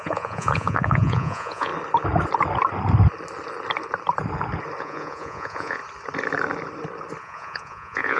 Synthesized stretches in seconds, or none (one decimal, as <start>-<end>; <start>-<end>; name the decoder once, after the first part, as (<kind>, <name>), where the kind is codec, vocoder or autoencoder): 0.0-1.7 (vocoder, Vocos); 4.8-5.8; 7.2-8.2